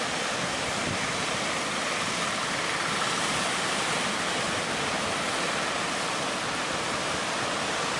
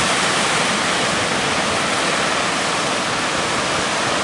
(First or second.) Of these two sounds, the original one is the second